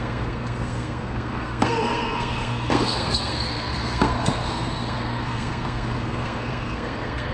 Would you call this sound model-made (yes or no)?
yes